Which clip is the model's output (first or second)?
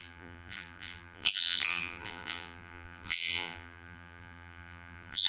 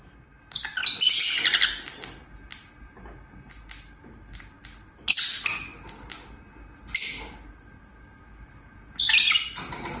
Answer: first